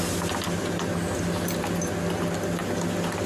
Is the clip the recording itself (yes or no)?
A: yes